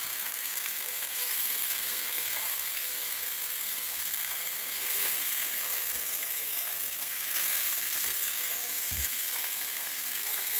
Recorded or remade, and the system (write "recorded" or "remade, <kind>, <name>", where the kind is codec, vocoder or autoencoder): remade, codec, SNAC